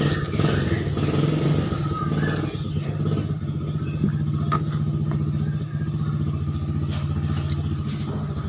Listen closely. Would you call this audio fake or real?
real